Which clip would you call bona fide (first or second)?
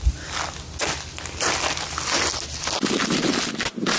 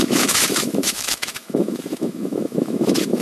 first